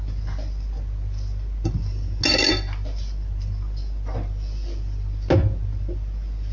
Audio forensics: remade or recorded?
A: recorded